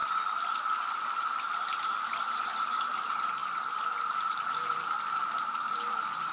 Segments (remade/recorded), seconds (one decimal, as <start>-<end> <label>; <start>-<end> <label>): 0.0-3.0 recorded; 3.0-3.4 remade; 3.4-4.2 recorded; 4.2-6.3 remade